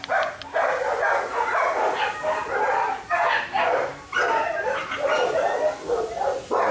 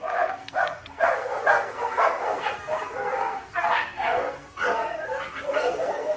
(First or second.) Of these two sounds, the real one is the first